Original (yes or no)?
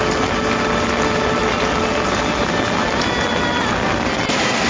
yes